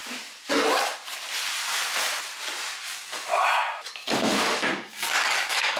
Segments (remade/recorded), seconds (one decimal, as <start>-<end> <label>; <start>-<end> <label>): 0.0-2.8 recorded; 2.8-3.3 remade; 3.3-3.9 recorded; 3.9-5.8 remade